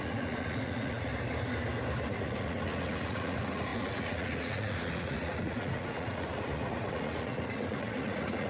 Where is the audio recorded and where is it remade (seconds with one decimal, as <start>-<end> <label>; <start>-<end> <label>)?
0.0-1.1 remade; 1.1-2.1 recorded; 2.1-8.5 remade